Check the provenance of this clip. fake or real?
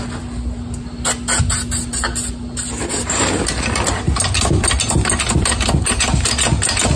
real